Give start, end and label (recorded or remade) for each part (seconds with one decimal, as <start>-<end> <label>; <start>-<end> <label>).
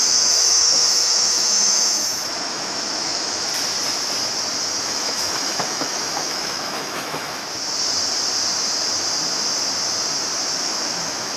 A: 0.0-3.5 remade; 3.5-4.8 recorded; 4.8-7.4 remade; 7.4-10.6 recorded; 10.6-11.4 remade